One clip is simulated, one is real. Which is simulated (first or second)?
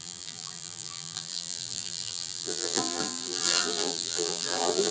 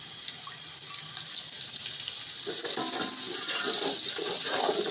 first